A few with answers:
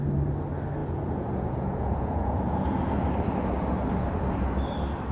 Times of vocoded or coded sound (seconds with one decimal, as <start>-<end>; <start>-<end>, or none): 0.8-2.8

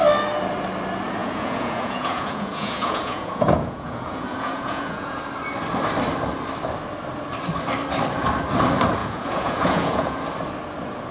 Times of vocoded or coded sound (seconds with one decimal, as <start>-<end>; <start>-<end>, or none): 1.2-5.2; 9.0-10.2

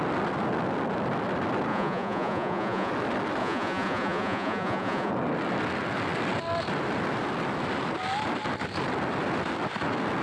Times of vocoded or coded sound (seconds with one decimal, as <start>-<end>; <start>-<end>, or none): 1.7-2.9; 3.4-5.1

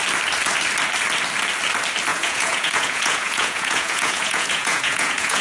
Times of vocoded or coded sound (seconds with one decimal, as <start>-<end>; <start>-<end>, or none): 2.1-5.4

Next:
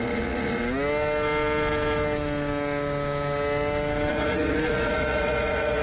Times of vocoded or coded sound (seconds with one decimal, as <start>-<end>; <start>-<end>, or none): 0.0-0.6; 4.1-5.8